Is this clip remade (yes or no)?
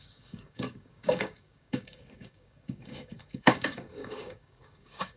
yes